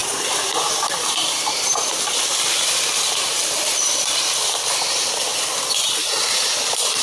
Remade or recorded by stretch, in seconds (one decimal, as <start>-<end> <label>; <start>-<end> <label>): 0.0-7.0 recorded